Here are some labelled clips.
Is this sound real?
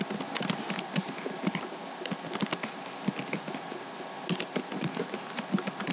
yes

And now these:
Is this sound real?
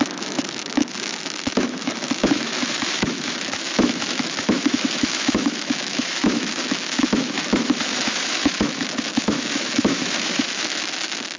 no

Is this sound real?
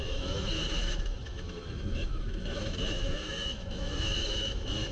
no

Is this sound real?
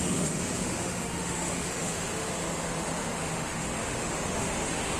no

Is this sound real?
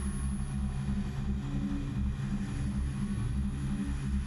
yes